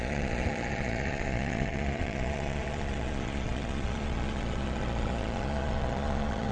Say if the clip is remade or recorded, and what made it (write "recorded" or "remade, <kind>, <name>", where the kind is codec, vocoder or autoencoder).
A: remade, vocoder, Vocos